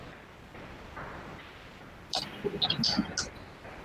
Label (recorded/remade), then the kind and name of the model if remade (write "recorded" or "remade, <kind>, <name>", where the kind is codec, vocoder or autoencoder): recorded